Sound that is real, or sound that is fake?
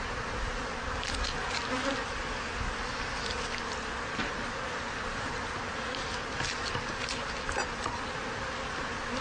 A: real